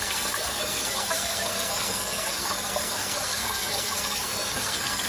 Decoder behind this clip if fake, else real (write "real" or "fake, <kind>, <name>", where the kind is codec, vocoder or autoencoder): fake, codec, SNAC